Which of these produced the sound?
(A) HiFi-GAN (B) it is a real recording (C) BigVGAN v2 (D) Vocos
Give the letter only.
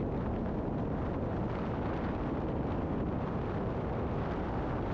B